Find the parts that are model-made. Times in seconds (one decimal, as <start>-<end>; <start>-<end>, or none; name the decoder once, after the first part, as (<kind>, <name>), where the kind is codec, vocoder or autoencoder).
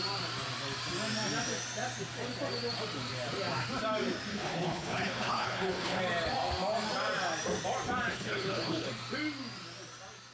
4.3-6.0 (codec, HILCodec); 8.1-8.9